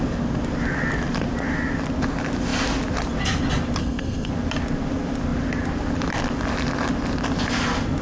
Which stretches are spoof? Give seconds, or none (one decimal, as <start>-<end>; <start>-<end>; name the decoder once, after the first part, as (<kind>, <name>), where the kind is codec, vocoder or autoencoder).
3.8-4.3 (codec, SNAC)

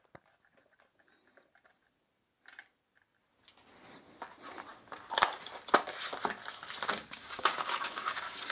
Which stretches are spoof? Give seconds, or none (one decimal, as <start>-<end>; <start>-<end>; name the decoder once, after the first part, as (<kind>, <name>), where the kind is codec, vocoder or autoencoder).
7.0-8.5 (codec, DAC)

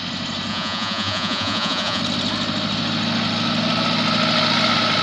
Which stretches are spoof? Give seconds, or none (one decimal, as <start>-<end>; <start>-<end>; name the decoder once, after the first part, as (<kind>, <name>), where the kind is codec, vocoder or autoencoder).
0.5-2.0 (vocoder, Vocos)

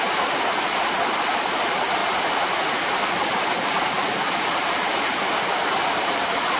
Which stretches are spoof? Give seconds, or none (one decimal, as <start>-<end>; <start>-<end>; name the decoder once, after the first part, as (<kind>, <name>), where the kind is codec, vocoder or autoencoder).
none

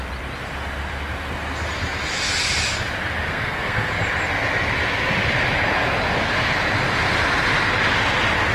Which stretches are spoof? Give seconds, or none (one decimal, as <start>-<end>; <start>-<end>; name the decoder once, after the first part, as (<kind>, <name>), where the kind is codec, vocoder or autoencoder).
3.3-4.0 (codec, SNAC)

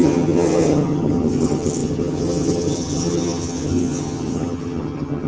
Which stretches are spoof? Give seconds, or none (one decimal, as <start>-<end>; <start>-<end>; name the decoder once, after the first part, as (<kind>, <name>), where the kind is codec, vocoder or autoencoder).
0.0-5.3 (vocoder, HiFi-GAN)